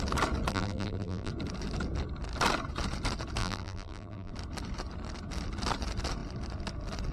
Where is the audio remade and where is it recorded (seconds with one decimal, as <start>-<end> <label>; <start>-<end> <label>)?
0.0-0.5 recorded; 0.5-1.3 remade; 1.3-3.4 recorded; 3.4-4.3 remade; 4.3-7.1 recorded